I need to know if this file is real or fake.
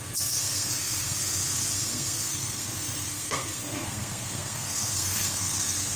fake